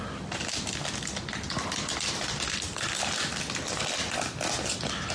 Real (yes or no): yes